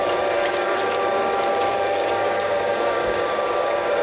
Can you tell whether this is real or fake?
fake